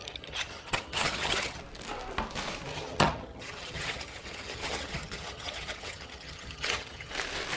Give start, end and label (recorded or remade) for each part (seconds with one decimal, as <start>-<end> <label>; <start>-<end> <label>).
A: 0.0-1.6 remade; 1.6-2.7 recorded; 2.7-7.1 remade; 7.1-7.6 recorded